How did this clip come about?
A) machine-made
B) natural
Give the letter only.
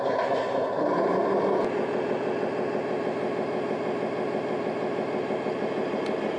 B